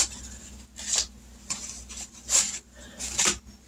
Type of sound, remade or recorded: recorded